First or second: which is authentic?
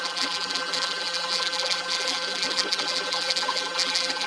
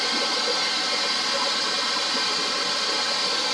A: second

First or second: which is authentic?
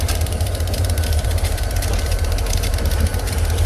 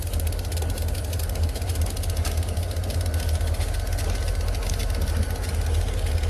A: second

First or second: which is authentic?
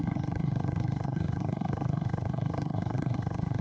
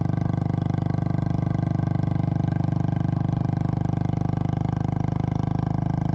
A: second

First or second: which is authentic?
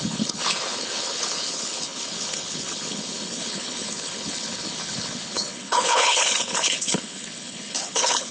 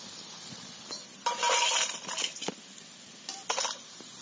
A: second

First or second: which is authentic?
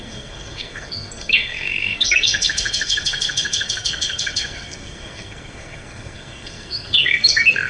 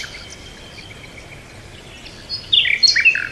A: second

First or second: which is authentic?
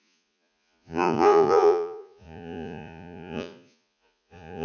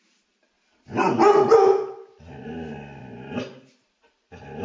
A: second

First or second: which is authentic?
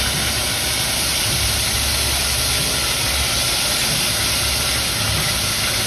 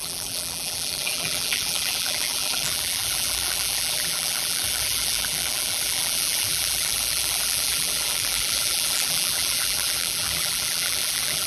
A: first